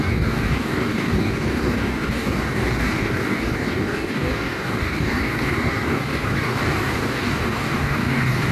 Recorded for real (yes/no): no